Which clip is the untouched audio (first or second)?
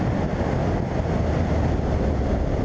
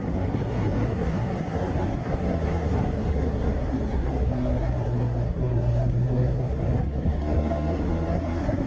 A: first